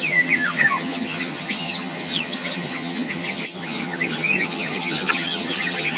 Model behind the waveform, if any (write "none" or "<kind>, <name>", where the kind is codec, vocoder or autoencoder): vocoder, HiFi-GAN